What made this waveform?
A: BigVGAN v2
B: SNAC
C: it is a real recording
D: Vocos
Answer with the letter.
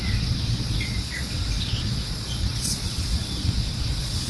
D